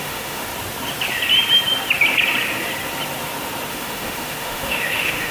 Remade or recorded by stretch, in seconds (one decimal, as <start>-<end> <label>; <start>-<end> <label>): 0.0-0.5 remade; 0.5-3.7 recorded; 3.7-5.3 remade